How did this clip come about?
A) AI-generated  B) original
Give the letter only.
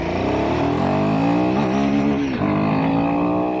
B